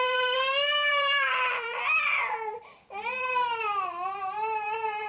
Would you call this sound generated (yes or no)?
yes